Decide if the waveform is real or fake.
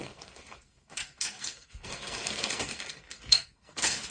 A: fake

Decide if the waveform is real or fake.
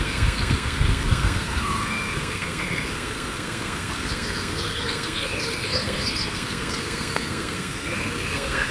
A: fake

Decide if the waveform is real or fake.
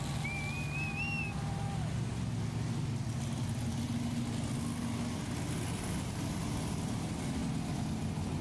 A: real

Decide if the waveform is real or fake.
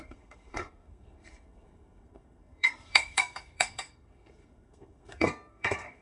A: fake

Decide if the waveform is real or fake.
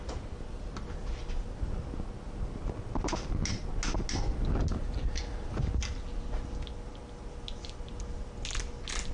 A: real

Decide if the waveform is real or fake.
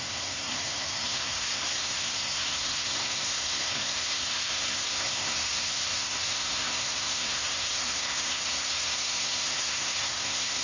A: fake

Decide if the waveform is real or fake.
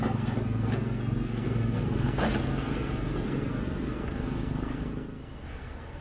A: fake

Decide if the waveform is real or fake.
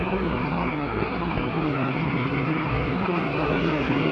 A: fake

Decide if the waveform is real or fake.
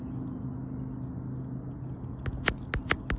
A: real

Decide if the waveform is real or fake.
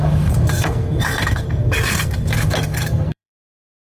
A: fake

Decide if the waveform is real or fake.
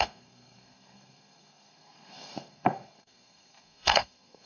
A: fake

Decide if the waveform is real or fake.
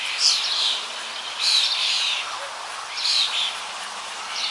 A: real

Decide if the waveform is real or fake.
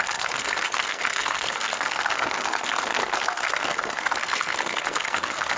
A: fake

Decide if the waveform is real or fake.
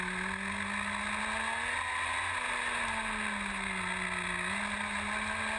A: real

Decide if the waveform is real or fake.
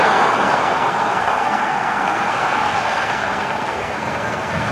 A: fake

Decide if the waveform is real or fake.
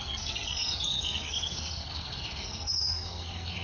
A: fake